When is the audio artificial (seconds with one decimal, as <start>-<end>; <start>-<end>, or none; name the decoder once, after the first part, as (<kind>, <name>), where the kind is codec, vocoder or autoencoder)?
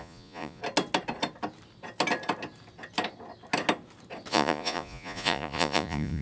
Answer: 0.0-0.6 (vocoder, Vocos); 4.3-6.2